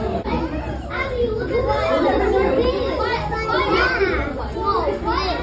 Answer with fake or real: real